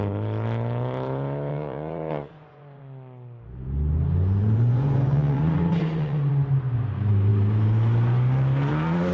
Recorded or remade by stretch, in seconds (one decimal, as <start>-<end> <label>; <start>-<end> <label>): 0.0-1.5 recorded; 1.5-2.8 remade; 2.8-4.4 recorded; 4.4-6.3 remade; 6.3-9.1 recorded